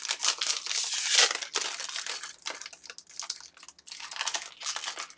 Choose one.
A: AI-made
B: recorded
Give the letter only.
B